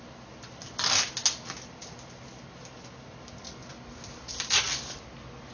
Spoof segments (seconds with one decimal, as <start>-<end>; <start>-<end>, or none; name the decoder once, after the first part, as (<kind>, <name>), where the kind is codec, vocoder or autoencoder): none